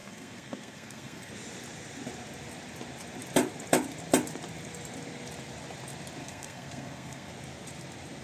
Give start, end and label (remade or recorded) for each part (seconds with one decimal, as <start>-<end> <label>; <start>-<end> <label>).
0.0-1.3 remade; 1.3-6.2 recorded; 6.2-7.3 remade; 7.3-8.2 recorded